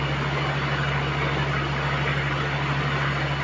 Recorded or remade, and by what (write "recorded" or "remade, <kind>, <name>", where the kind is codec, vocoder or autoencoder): recorded